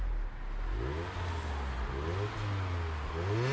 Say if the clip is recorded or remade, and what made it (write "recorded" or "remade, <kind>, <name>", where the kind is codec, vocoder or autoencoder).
recorded